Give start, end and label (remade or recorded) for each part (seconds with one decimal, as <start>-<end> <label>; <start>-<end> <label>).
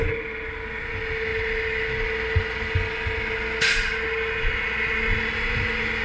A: 0.0-6.0 recorded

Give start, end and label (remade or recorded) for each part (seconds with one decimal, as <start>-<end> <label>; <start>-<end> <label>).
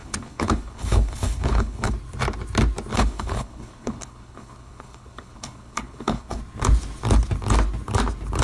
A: 0.0-1.9 remade; 1.9-2.9 recorded; 2.9-6.4 remade; 6.4-8.4 recorded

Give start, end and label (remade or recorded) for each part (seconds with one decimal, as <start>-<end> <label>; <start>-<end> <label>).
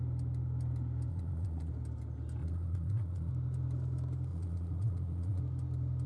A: 0.0-1.1 recorded; 1.1-1.7 remade; 1.7-2.4 recorded; 2.4-3.3 remade; 3.3-4.3 recorded; 4.3-5.4 remade; 5.4-6.1 recorded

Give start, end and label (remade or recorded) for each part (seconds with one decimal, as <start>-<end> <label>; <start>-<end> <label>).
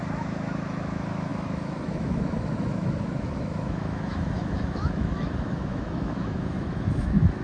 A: 0.0-7.4 remade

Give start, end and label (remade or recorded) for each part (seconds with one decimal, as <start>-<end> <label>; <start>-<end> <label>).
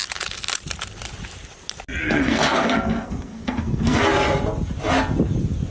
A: 0.0-2.0 recorded; 2.0-4.0 remade; 4.0-5.7 recorded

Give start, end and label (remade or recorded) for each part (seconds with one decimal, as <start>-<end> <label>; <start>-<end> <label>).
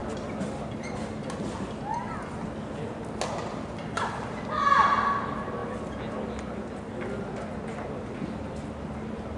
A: 0.0-9.4 recorded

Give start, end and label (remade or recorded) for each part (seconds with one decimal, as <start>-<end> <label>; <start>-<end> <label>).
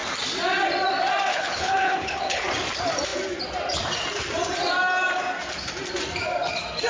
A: 0.0-1.3 recorded; 1.3-2.5 remade; 2.5-6.9 recorded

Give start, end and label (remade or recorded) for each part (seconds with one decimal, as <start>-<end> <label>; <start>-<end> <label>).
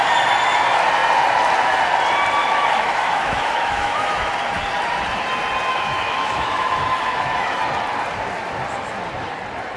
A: 0.0-2.4 recorded; 2.4-4.3 remade; 4.3-5.7 recorded; 5.7-7.6 remade; 7.6-9.8 recorded